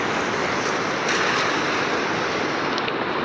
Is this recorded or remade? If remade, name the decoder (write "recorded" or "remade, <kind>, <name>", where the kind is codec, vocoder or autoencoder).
recorded